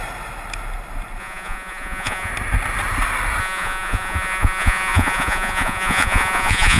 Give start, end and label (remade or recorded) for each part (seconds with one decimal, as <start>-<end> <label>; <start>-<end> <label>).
0.0-1.2 recorded; 1.2-2.3 remade; 2.3-3.4 recorded; 3.4-6.8 remade